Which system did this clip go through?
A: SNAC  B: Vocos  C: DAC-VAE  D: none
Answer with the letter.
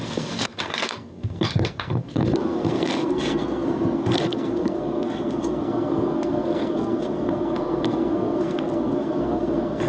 A